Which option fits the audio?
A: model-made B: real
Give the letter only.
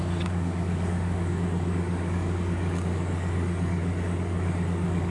A